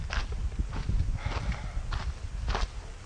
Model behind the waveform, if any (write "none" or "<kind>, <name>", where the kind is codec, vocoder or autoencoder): none